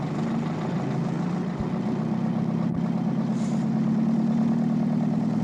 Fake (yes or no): no